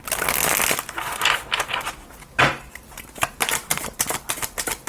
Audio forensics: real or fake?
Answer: real